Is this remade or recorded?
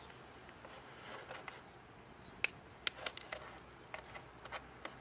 recorded